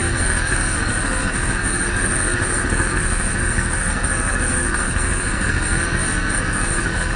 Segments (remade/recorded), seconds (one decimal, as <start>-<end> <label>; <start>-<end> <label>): 0.0-7.2 remade